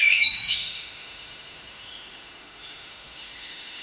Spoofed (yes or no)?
yes